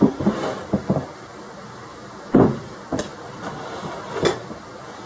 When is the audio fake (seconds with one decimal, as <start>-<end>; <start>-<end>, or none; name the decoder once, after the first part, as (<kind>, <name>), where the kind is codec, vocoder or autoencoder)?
none